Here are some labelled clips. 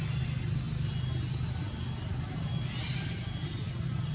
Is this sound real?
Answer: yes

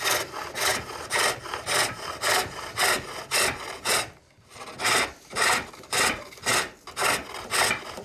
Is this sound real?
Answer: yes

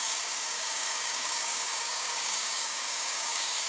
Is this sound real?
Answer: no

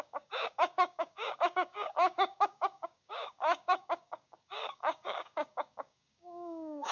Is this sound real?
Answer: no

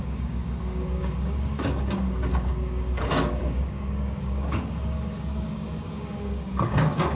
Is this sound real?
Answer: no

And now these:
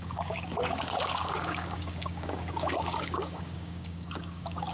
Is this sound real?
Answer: no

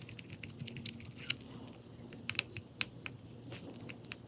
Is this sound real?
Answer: yes